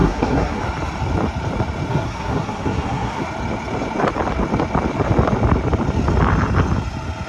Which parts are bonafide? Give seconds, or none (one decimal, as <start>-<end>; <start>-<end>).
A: 0.6-1.9; 3.2-7.3